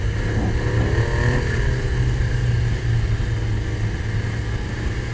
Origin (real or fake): real